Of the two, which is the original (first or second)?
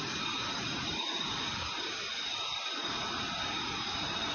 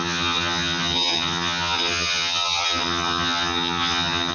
first